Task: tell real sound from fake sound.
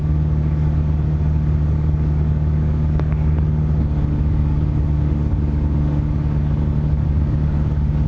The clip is fake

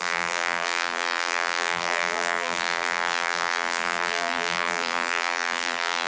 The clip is fake